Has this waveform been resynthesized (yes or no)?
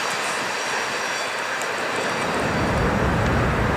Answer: no